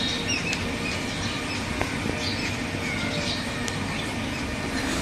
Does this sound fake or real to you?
real